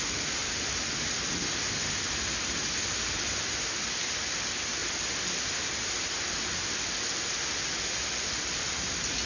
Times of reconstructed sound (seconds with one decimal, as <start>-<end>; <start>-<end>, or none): none